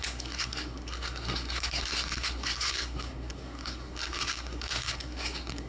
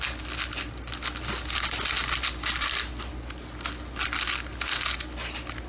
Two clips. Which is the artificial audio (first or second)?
first